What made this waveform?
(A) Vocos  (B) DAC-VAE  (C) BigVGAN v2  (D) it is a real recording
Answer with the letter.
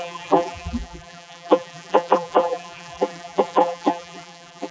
C